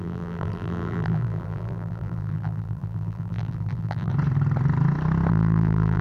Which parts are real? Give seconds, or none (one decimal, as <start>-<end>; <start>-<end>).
4.1-5.3

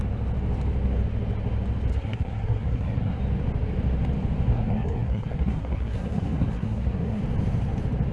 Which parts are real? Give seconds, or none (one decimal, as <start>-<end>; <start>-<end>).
0.0-1.9; 3.2-4.5; 7.2-8.1

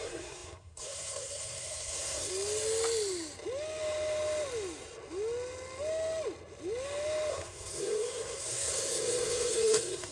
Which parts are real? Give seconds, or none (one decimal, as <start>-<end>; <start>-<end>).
2.3-7.3

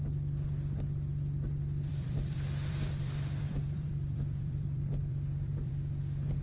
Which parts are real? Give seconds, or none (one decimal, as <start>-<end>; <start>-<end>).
0.0-1.9; 5.7-6.4

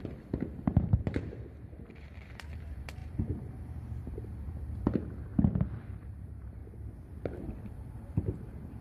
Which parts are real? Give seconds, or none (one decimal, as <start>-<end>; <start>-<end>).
5.3-5.8; 6.6-7.3

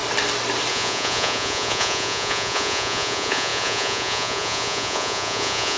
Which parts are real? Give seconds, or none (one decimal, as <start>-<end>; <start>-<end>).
0.0-0.7

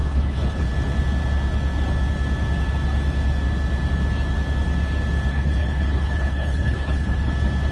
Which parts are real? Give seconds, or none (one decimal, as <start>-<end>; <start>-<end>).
0.7-5.3; 7.3-7.7

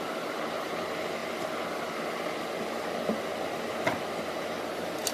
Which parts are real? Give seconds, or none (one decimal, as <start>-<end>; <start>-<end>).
0.0-5.1